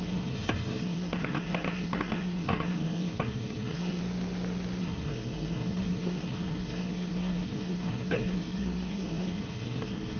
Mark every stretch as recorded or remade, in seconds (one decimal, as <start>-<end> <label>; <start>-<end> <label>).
0.0-4.0 remade; 4.0-4.8 recorded; 4.8-10.2 remade